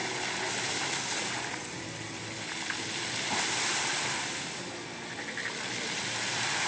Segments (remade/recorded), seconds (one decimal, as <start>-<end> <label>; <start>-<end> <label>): 0.0-6.7 recorded